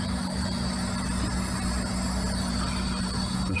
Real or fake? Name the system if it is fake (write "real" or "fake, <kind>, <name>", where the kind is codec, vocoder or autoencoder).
real